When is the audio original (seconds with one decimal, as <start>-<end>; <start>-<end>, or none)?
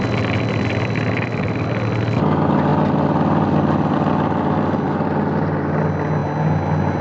0.0-7.0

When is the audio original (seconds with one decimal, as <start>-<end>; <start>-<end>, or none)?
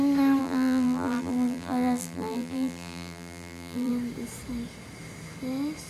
0.0-0.4; 3.9-5.9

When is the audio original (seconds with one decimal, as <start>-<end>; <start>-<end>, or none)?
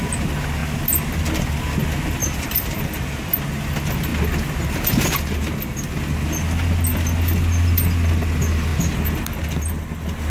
0.0-2.2; 3.4-10.3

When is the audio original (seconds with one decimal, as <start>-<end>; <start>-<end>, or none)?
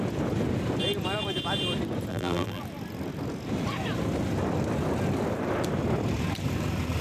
0.0-2.1; 2.6-7.0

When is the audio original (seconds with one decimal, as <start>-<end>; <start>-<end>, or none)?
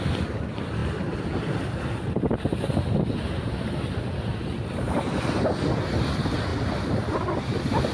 0.0-7.9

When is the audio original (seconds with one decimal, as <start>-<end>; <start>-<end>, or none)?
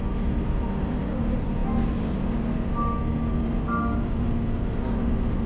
0.0-5.5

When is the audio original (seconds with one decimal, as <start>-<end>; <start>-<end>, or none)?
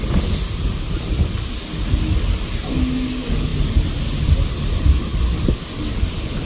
0.0-6.5